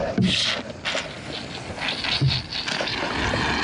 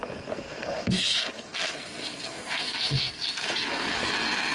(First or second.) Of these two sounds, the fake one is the second